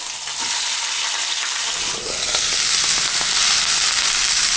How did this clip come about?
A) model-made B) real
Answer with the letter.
B